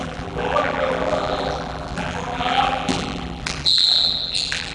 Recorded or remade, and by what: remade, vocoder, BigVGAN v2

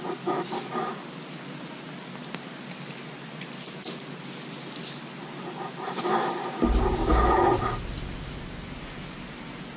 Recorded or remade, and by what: recorded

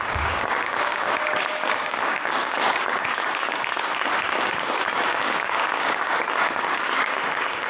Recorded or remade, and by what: remade, codec, DAC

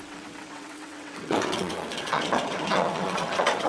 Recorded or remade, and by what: remade, vocoder, WaveNeXt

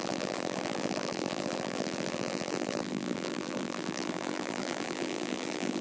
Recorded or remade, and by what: remade, vocoder, BigVGAN v2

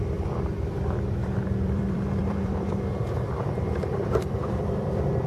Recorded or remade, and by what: remade, vocoder, BigVGAN v2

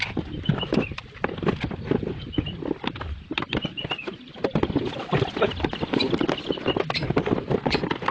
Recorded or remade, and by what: recorded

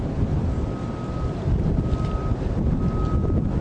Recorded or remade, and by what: recorded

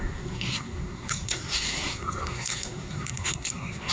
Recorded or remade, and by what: remade, codec, SNAC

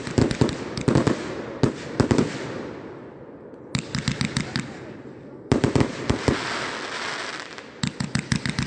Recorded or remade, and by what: recorded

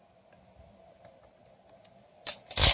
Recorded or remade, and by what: recorded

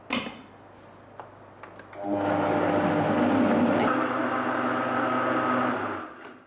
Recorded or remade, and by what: recorded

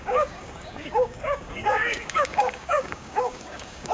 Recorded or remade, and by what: remade, codec, DAC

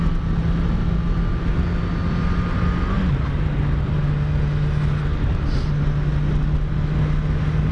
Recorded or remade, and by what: recorded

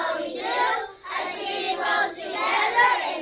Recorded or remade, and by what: remade, vocoder, BigVGAN v2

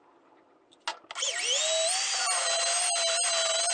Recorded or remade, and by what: recorded